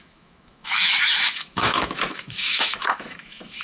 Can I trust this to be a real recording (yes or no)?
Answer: no